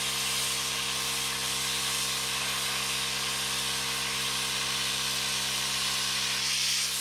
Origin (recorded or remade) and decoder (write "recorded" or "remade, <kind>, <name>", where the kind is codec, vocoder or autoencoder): recorded